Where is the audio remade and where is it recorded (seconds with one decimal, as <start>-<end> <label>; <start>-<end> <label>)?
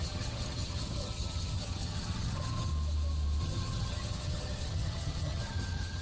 0.0-2.7 remade; 2.7-3.4 recorded; 3.4-6.0 remade